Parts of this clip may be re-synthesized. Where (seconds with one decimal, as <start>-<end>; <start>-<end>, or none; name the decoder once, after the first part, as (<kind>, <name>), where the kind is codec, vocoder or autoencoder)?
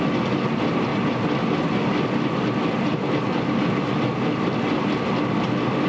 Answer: none